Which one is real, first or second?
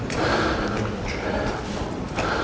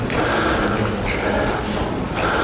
second